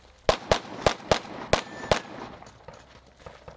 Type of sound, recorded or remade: recorded